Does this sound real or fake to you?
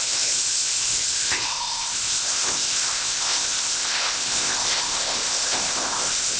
fake